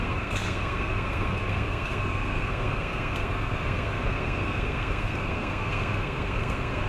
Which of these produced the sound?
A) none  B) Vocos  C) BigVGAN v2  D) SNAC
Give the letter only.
D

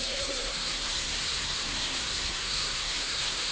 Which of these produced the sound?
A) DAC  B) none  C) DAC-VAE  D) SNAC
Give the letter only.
D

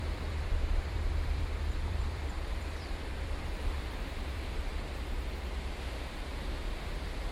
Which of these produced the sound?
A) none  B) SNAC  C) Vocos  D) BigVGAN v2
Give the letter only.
D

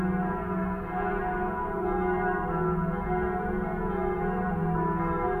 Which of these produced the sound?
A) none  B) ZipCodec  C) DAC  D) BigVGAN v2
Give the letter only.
A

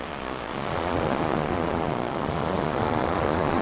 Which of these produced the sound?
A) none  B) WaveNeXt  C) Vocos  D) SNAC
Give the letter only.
C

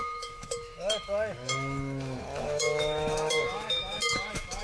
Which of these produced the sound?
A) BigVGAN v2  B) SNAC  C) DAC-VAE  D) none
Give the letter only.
C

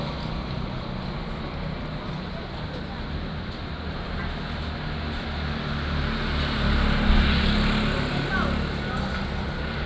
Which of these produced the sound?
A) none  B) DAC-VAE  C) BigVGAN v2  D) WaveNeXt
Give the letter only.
A